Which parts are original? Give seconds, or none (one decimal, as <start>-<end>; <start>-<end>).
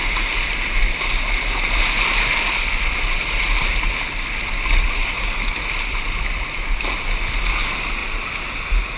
0.0-8.0